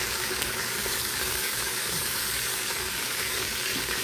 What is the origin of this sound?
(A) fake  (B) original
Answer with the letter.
A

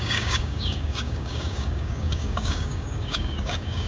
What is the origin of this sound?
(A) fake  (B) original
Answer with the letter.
A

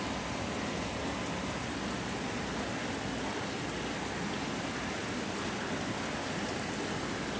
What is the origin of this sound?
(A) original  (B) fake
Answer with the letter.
A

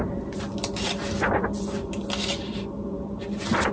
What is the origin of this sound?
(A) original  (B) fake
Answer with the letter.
A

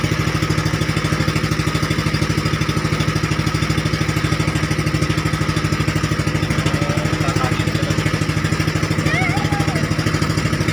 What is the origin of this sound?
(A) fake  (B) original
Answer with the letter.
B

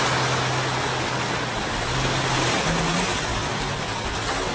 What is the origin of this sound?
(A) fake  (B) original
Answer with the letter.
B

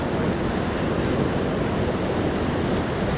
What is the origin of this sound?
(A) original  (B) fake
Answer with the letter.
A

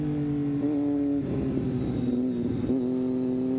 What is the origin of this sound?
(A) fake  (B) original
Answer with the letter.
B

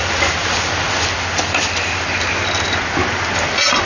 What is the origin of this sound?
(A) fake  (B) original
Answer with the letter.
B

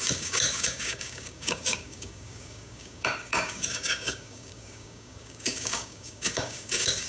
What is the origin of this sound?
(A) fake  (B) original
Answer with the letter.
A